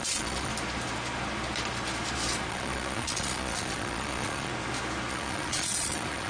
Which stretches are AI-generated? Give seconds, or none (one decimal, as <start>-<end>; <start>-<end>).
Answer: 0.0-0.5; 2.5-4.5; 5.1-6.3